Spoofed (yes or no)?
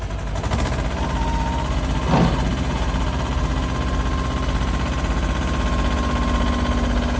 no